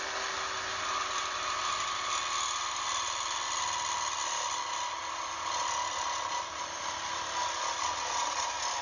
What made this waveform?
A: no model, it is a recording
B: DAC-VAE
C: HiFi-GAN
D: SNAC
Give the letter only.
A